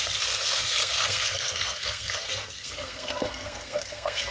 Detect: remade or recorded remade